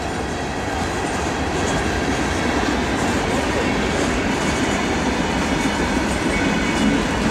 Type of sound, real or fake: real